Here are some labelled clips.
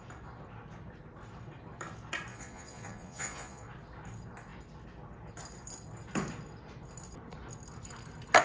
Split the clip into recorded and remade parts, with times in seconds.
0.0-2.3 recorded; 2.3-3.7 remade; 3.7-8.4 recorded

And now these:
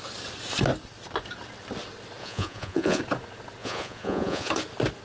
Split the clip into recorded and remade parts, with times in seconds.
0.0-2.2 recorded; 2.2-3.0 remade; 3.0-3.6 recorded; 3.6-4.5 remade; 4.5-5.0 recorded

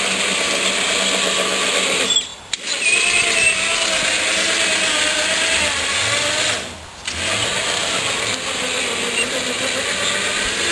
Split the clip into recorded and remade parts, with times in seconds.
0.0-10.7 recorded

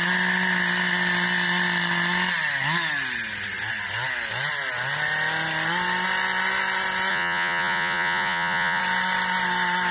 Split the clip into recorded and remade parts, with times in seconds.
0.0-7.1 recorded; 7.1-8.8 remade; 8.8-9.9 recorded